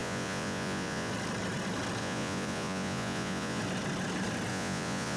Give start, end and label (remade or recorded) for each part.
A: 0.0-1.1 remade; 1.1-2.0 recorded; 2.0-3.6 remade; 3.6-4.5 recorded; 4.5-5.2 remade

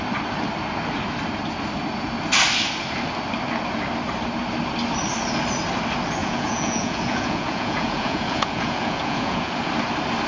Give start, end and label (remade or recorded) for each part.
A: 0.0-6.2 recorded; 6.2-9.7 remade; 9.7-10.3 recorded